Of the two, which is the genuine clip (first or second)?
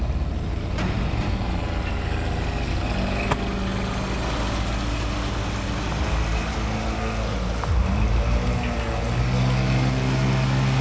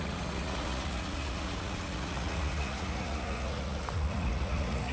first